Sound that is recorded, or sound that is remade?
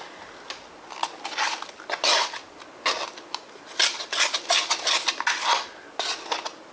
recorded